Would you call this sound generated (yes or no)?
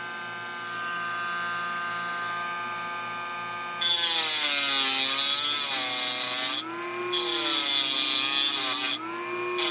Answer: no